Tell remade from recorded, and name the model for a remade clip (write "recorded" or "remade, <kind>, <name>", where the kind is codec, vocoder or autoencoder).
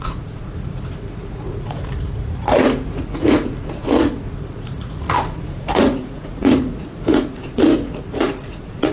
remade, vocoder, Vocos